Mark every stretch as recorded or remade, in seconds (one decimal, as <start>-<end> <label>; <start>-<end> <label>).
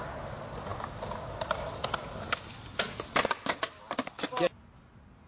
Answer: 0.0-5.3 recorded